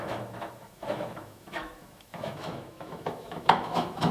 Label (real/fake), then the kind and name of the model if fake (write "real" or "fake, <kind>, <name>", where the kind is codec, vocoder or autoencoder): fake, autoencoder, DAC-VAE